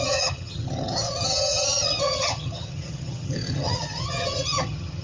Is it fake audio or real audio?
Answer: fake